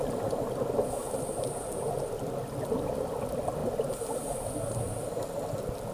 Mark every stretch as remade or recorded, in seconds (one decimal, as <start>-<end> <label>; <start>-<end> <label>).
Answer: 0.0-5.9 recorded